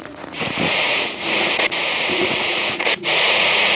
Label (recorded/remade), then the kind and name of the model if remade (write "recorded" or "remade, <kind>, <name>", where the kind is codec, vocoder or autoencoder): remade, vocoder, Vocos